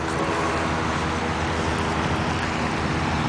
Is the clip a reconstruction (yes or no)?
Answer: no